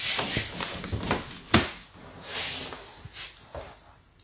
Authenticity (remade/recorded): recorded